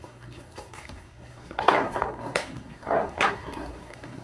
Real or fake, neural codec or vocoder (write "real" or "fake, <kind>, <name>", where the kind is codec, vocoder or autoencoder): fake, codec, SNAC